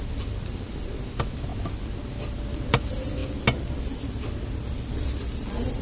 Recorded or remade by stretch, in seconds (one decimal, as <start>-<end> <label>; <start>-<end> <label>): 0.0-1.5 remade; 1.5-2.3 recorded; 2.3-3.2 remade; 3.2-4.9 recorded; 4.9-5.8 remade